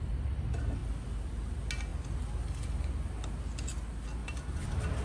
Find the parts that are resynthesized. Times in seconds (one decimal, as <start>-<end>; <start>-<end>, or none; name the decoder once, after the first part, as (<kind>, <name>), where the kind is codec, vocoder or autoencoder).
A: none